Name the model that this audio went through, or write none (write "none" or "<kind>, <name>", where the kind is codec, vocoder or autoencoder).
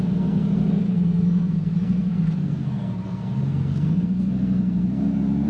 codec, SNAC